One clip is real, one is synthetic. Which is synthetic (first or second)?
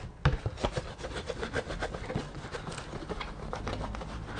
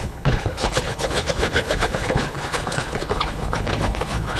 second